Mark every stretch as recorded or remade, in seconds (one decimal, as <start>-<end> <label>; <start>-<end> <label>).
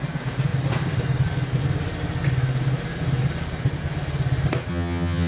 0.0-4.7 recorded; 4.7-5.3 remade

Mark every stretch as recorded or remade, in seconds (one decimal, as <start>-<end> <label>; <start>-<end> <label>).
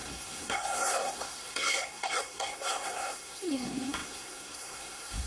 0.0-5.3 remade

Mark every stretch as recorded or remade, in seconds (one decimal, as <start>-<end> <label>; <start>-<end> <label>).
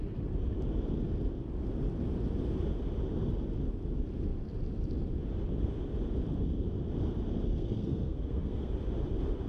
0.0-7.5 recorded; 7.5-8.7 remade; 8.7-9.5 recorded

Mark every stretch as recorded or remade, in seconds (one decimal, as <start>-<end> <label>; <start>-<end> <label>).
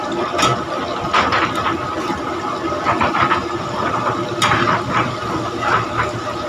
0.0-6.5 recorded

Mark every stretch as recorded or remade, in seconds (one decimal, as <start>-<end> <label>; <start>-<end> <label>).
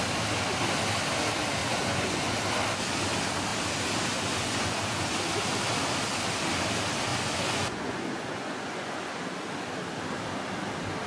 0.0-1.6 recorded; 1.6-2.3 remade; 2.3-4.1 recorded; 4.1-5.1 remade; 5.1-7.1 recorded; 7.1-9.2 remade; 9.2-11.1 recorded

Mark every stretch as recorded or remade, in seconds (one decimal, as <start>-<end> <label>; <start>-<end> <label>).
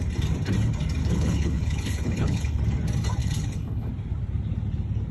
0.0-1.0 recorded; 1.0-2.6 remade; 2.6-3.2 recorded; 3.2-3.9 remade; 3.9-5.1 recorded